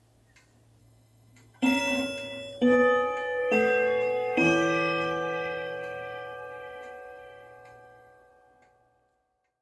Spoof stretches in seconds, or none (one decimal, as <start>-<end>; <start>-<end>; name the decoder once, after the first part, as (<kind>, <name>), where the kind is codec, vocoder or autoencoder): 0.8-1.8 (autoencoder, DAC-VAE); 3.4-8.3